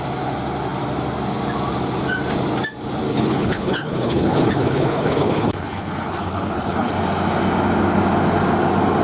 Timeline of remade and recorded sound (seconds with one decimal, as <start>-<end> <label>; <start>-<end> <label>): 0.0-3.1 recorded; 3.1-6.9 remade; 6.9-9.0 recorded